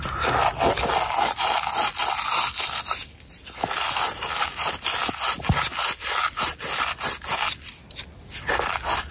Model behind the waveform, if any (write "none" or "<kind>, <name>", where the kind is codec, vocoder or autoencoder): none